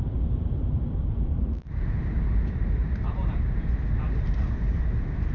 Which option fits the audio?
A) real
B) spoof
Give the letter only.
B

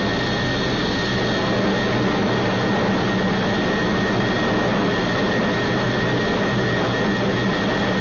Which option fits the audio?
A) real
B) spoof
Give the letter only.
A